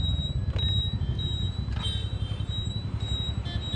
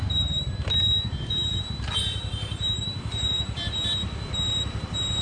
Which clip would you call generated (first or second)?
second